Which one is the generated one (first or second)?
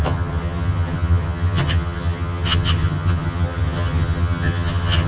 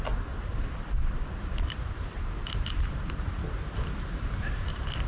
first